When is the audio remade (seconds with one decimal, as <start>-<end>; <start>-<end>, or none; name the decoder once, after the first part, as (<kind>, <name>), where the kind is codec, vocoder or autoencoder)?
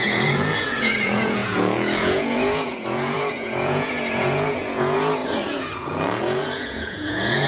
0.0-7.5 (vocoder, Vocos)